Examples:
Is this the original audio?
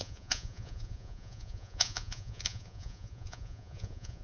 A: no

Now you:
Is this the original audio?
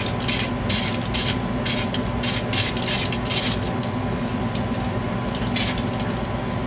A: yes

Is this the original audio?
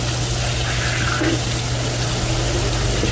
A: yes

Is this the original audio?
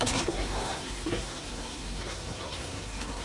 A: no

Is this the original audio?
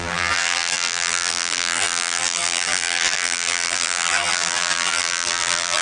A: no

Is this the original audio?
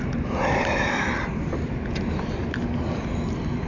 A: yes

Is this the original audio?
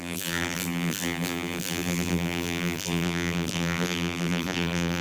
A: no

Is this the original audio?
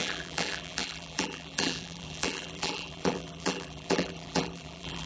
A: no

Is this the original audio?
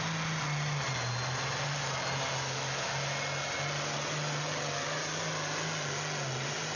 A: yes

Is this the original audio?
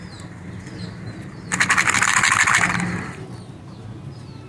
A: yes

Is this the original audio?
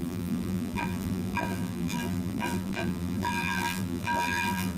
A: no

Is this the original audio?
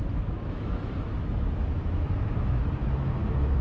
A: no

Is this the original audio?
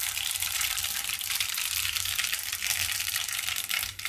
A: no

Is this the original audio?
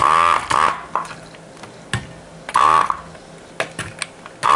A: yes